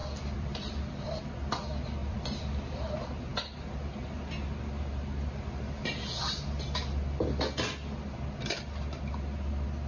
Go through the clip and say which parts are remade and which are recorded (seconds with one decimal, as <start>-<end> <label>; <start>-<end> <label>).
0.0-1.3 remade; 1.3-2.0 recorded; 2.0-2.9 remade; 2.9-9.9 recorded